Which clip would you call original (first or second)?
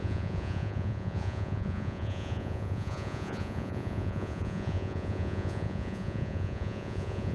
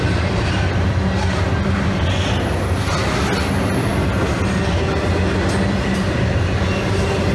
second